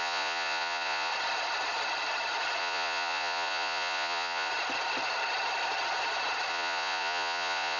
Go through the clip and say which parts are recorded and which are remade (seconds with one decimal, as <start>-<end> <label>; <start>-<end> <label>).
0.0-1.1 remade; 1.1-2.6 recorded; 2.6-4.5 remade; 4.5-6.5 recorded; 6.5-7.8 remade